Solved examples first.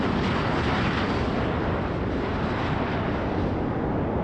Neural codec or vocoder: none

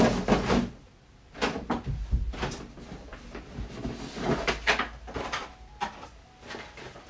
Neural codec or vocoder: none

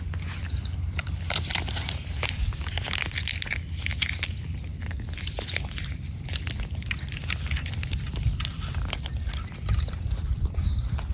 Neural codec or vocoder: none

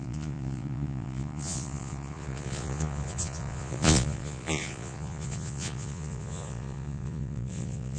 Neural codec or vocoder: vocoder, Vocos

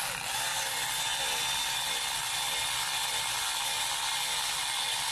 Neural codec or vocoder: none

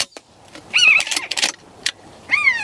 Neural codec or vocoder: vocoder, BigVGAN v2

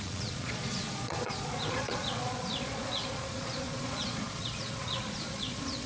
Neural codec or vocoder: vocoder, Vocos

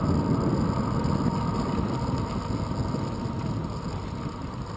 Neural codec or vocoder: none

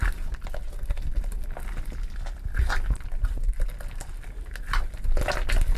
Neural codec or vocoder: none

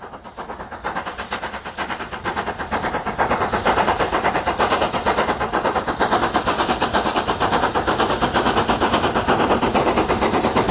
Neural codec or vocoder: none